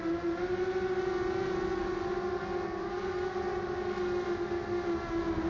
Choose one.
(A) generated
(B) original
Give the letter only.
B